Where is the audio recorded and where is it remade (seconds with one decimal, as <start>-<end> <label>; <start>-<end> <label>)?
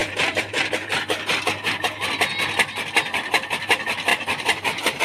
0.0-0.7 remade; 0.7-4.1 recorded; 4.1-5.0 remade